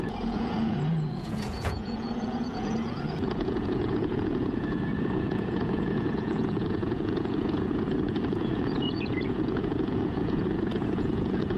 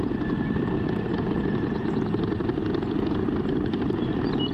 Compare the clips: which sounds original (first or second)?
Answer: second